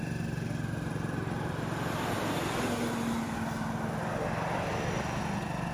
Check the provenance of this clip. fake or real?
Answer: real